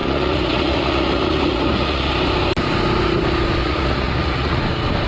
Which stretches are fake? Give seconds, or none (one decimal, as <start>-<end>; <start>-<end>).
0.0-2.1; 3.6-4.6